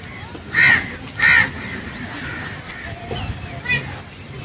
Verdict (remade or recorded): recorded